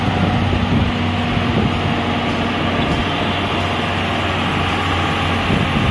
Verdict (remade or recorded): recorded